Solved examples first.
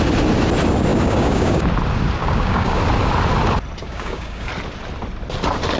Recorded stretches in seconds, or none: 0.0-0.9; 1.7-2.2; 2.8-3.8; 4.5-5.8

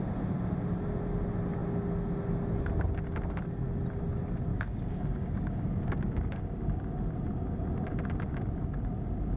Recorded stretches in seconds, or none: 0.0-4.5; 6.8-9.4

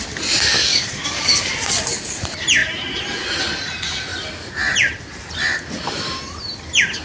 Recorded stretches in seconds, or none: 0.0-0.7; 1.5-7.0

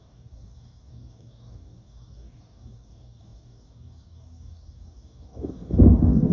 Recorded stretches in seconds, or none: none

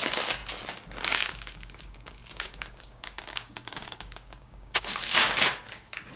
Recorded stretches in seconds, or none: 0.4-1.0

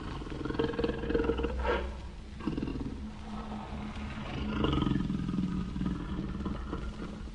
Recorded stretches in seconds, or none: 0.0-7.3